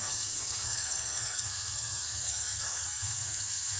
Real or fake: fake